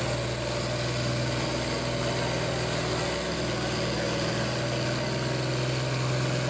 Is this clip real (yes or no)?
yes